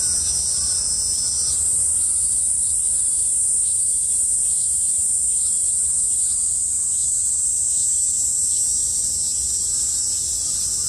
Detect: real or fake real